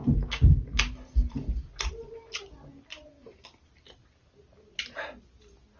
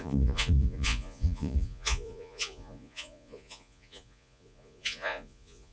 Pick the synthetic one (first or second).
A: second